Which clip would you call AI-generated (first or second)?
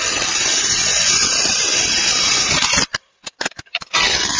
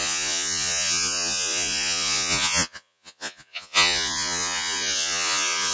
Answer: second